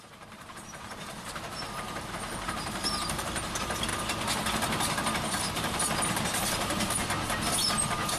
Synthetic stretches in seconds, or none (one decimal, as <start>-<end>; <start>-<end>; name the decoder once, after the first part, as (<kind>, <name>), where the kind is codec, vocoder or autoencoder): 0.0-3.9 (vocoder, BigVGAN v2); 5.5-7.0; 7.6-8.2